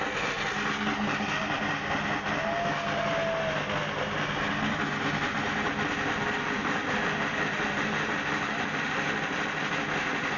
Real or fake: real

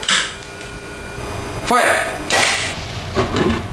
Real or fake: fake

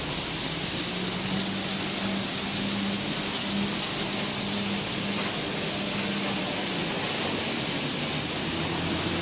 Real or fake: real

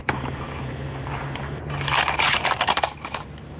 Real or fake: fake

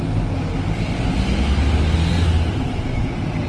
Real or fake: real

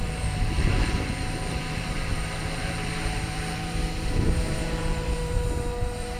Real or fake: fake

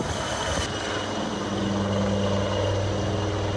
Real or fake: real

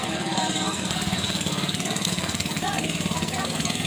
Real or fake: fake